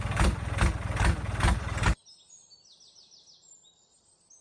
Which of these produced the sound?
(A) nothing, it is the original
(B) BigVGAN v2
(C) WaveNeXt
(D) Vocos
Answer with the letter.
A